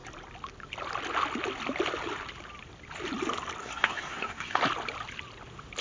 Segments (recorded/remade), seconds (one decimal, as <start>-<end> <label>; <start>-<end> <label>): 0.0-3.6 recorded; 3.6-4.6 remade; 4.6-5.8 recorded